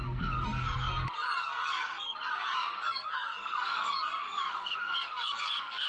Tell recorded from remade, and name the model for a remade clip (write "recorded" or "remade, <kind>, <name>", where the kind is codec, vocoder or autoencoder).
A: remade, codec, SNAC